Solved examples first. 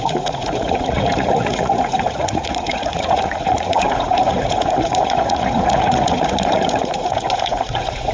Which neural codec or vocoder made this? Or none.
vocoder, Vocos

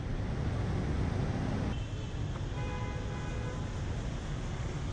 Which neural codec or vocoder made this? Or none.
none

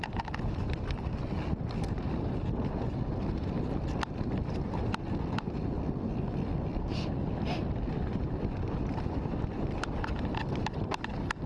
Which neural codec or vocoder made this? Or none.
none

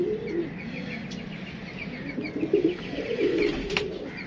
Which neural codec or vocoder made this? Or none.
none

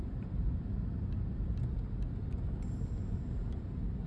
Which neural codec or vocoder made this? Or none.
none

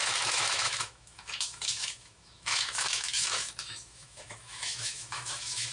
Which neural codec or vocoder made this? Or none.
autoencoder, DAC-VAE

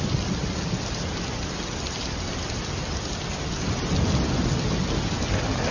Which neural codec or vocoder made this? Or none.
none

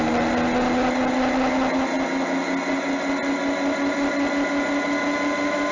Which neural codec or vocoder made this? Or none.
none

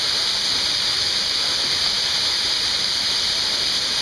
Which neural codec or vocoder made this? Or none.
none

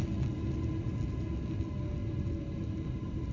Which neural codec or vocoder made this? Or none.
none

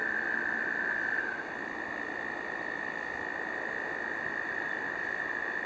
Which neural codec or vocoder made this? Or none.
none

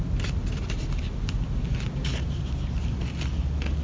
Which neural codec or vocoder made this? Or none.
none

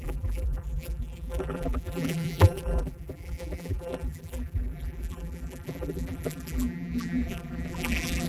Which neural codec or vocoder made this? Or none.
vocoder, BigVGAN v2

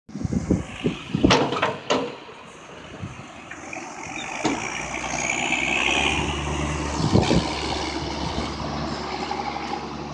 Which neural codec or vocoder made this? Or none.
none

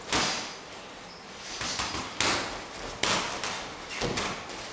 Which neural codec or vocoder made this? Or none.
none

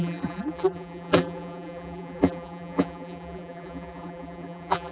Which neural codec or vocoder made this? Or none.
vocoder, BigVGAN v2